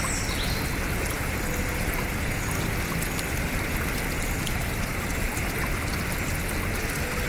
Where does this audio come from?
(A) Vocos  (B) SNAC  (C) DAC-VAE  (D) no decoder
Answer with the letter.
D